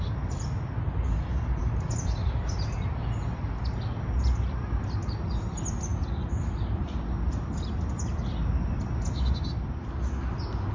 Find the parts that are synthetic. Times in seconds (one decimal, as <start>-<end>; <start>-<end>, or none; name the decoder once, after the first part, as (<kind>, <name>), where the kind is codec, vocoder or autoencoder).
none